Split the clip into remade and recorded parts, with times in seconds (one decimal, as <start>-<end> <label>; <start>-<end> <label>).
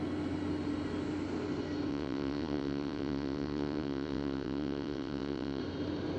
0.0-1.9 recorded; 1.9-5.6 remade; 5.6-6.2 recorded